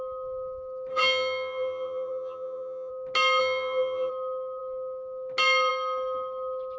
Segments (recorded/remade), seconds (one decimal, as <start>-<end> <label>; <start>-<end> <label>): 0.0-0.9 recorded; 0.9-2.9 remade; 2.9-3.4 recorded; 3.4-4.1 remade; 4.1-6.8 recorded

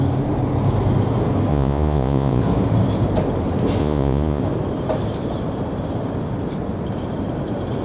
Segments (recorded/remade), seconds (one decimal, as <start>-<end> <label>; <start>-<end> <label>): 0.0-1.5 recorded; 1.5-2.4 remade; 2.4-3.8 recorded; 3.8-4.4 remade; 4.4-7.8 recorded

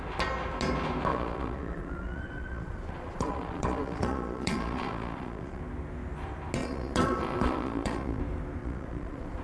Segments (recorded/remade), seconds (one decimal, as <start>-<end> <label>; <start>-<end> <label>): 0.0-1.1 recorded; 1.1-5.6 remade; 5.6-6.6 recorded; 6.6-8.2 remade; 8.2-8.6 recorded; 8.6-9.4 remade

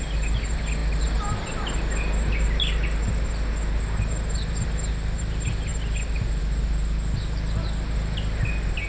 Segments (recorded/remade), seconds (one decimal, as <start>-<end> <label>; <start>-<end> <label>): 0.0-8.9 recorded

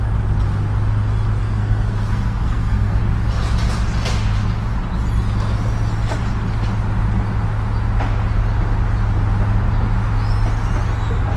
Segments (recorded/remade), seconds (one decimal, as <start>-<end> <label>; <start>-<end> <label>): 0.0-1.4 recorded; 1.4-3.0 remade; 3.0-11.4 recorded